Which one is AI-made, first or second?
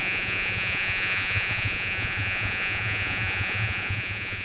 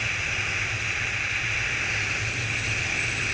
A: first